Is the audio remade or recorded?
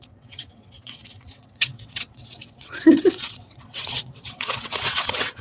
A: remade